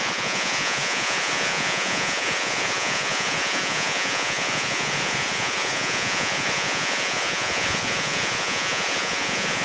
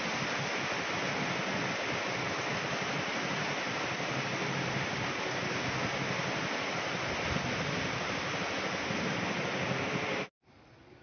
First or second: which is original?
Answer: second